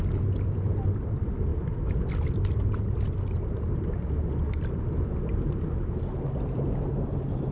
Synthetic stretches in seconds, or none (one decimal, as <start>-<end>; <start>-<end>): none